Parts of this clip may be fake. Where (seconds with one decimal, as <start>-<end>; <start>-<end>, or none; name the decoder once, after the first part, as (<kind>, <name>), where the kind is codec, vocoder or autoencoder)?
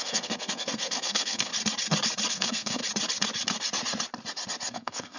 0.0-1.5 (codec, SNAC); 2.3-2.8; 4.7-5.2